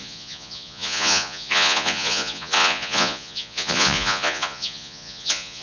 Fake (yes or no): yes